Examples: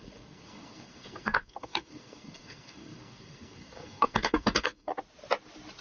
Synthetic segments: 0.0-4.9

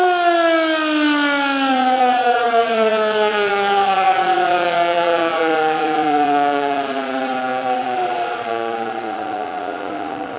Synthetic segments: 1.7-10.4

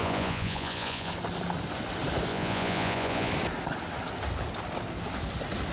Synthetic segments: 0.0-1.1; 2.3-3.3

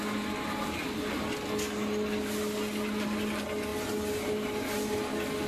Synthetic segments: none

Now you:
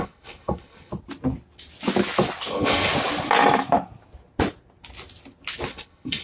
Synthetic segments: 0.0-0.9; 2.5-2.9; 5.7-6.2

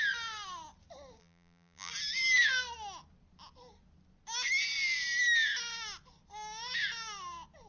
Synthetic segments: 1.2-1.9

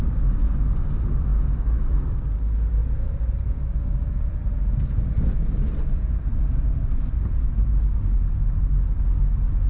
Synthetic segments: none

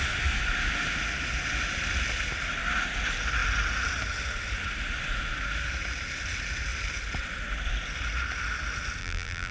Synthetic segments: 9.0-9.5